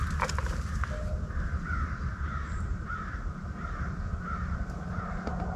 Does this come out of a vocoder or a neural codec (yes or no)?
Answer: no